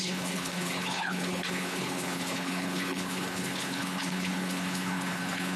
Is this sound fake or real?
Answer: fake